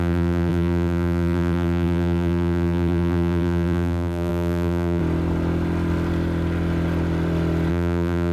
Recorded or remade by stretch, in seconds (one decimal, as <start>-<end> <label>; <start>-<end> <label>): 0.0-5.0 remade; 5.0-7.7 recorded; 7.7-8.3 remade